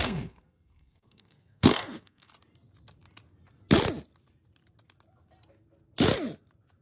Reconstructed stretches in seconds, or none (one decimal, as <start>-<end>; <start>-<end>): 0.0-2.3